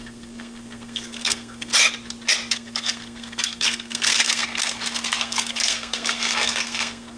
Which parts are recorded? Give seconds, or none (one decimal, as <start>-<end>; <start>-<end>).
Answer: 1.7-2.5